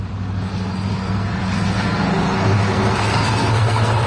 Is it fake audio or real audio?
fake